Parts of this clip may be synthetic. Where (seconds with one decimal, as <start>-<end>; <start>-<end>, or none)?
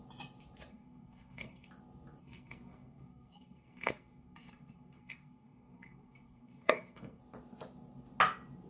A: 0.7-1.7; 2.2-7.2